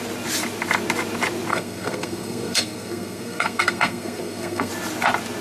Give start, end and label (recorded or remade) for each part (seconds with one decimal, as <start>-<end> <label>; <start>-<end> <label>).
0.0-1.5 recorded; 1.5-4.7 remade; 4.7-5.4 recorded

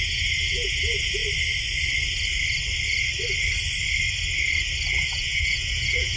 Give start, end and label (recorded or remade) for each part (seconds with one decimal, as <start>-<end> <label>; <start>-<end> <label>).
0.0-1.2 remade; 1.2-4.9 recorded; 4.9-6.2 remade

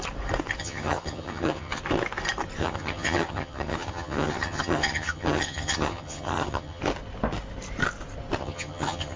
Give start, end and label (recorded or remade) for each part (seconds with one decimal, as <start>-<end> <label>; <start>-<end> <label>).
0.0-0.6 recorded; 0.6-1.8 remade; 1.8-2.6 recorded; 2.6-6.8 remade; 6.8-8.4 recorded; 8.4-9.2 remade